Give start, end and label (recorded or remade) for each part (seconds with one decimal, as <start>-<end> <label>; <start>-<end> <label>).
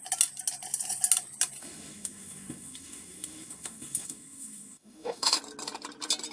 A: 0.0-1.6 recorded; 1.6-5.4 remade; 5.4-6.3 recorded